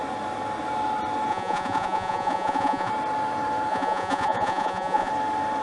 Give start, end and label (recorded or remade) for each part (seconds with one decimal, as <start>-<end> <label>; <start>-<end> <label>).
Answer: 0.0-1.3 recorded; 1.3-2.9 remade; 2.9-3.7 recorded; 3.7-5.1 remade; 5.1-5.6 recorded